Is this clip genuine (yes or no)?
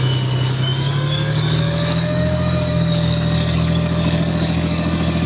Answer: no